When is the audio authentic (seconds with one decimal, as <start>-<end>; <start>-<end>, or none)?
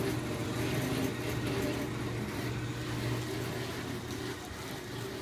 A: 0.0-5.2